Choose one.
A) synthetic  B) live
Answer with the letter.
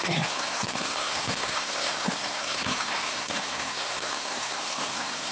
A